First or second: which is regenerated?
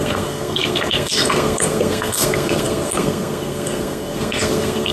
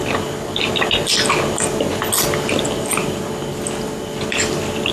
first